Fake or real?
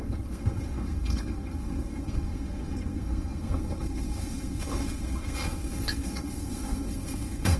fake